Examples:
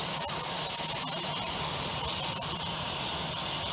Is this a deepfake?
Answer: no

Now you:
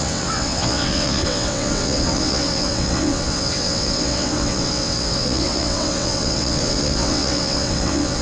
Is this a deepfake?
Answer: yes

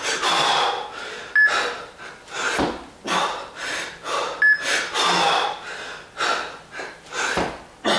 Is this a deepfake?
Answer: no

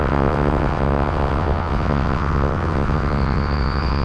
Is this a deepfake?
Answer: yes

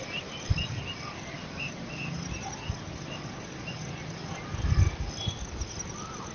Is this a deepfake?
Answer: no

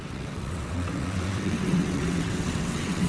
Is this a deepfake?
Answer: yes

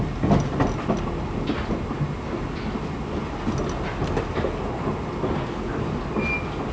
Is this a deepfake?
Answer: no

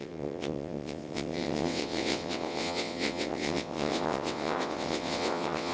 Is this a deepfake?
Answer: yes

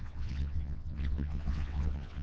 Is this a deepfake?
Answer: yes